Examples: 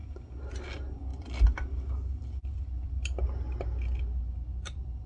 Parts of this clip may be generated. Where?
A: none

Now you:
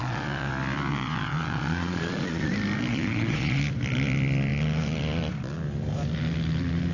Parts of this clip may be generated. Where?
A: 0.0-0.5 (vocoder, Vocos); 0.9-2.5; 2.9-3.6

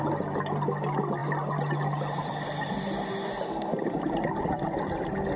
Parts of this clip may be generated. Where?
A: none